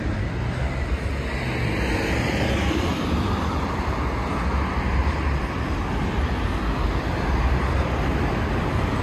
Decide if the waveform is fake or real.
real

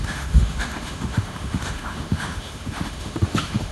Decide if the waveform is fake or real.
fake